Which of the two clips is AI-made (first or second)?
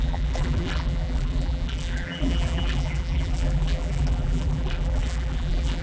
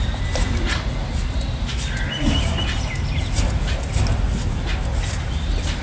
first